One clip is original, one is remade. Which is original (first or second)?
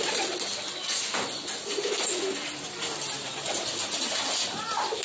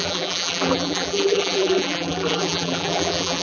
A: first